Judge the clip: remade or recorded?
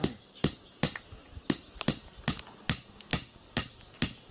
recorded